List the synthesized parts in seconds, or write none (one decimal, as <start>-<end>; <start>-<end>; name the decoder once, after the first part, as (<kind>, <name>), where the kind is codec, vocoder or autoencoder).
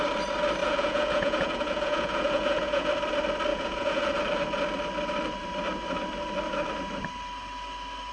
0.6-2.9 (vocoder, Vocos); 3.5-4.1